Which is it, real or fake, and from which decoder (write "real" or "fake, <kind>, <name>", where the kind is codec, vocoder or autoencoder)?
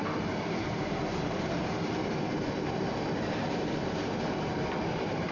fake, vocoder, BigVGAN v2